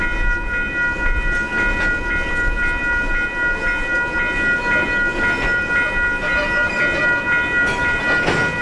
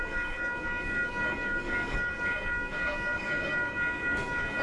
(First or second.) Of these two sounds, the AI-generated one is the second